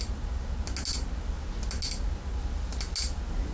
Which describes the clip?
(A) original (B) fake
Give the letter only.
A